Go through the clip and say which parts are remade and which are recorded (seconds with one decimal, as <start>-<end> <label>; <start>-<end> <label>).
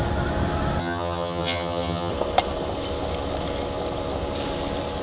0.0-0.8 recorded; 0.8-2.1 remade; 2.1-5.0 recorded